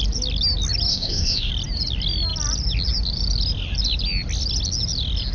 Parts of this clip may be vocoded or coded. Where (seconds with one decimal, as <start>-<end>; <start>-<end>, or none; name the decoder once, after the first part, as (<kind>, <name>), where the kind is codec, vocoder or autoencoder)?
0.9-1.5 (codec, ZipCodec)